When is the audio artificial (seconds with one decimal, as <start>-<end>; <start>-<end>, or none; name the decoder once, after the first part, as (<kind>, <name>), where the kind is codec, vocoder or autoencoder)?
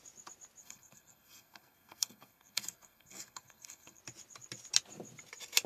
0.6-4.0 (codec, SNAC)